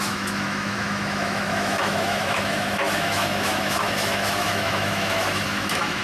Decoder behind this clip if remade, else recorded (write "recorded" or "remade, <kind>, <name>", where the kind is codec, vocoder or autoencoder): remade, autoencoder, DAC-VAE